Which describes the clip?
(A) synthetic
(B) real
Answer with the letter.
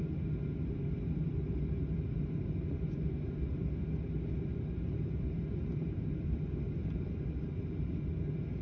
B